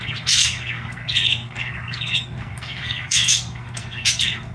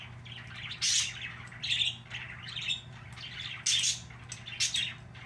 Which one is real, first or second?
second